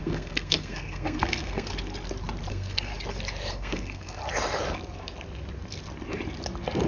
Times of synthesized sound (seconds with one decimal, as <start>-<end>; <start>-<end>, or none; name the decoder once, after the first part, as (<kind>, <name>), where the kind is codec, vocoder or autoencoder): 0.0-1.7 (codec, SNAC); 2.5-2.9; 3.5-4.2